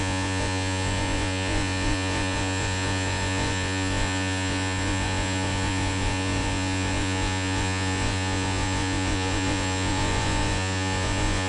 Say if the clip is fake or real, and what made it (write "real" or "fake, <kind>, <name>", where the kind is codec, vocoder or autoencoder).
fake, vocoder, Vocos